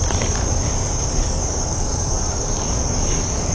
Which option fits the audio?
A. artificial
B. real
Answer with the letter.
A